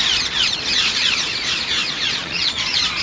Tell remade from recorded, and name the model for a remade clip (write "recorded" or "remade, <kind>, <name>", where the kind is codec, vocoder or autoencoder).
remade, vocoder, Vocos